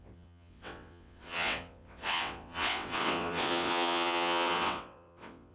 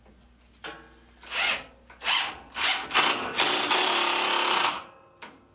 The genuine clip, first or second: second